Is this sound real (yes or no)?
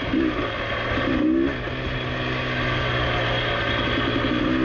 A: yes